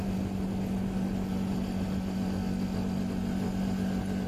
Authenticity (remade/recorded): recorded